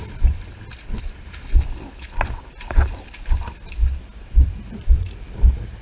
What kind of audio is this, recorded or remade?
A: recorded